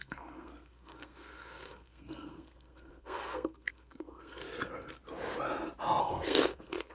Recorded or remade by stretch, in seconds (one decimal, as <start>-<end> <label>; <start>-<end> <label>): 0.0-4.4 remade; 4.4-6.0 recorded; 6.0-6.9 remade